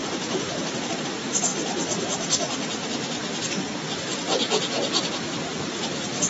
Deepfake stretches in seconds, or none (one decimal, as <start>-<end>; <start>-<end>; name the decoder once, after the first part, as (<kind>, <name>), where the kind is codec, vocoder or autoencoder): none